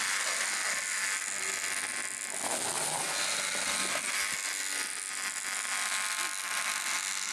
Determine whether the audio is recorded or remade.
recorded